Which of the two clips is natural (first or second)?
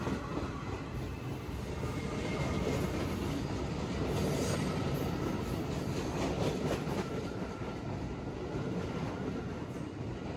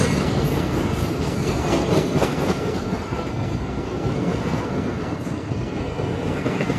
first